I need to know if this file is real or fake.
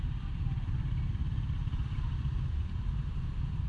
fake